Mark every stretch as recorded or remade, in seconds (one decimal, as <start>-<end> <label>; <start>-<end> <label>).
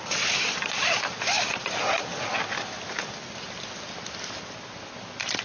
0.0-5.4 recorded